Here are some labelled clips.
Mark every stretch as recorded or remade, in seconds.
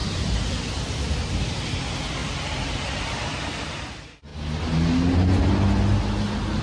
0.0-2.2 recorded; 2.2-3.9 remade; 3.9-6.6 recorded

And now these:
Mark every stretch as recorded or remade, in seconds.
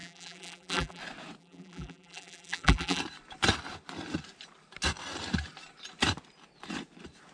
0.0-1.0 remade; 1.0-1.4 recorded; 1.4-3.0 remade; 3.0-7.3 recorded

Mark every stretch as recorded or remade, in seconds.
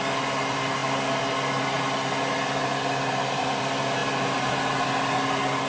0.0-5.7 recorded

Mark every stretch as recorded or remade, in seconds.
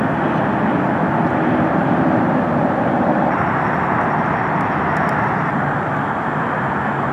0.0-1.8 recorded; 1.8-5.5 remade; 5.5-7.1 recorded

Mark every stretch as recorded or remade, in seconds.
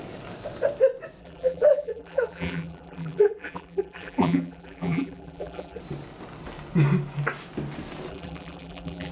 0.0-1.2 recorded; 1.2-5.8 remade; 5.8-8.1 recorded; 8.1-9.1 remade